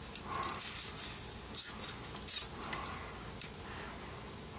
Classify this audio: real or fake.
real